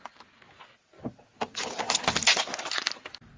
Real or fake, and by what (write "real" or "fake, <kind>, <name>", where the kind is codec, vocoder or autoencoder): real